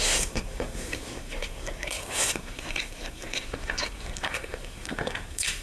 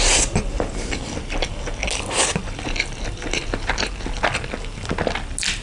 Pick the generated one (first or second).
first